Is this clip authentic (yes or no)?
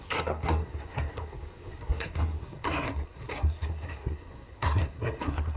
no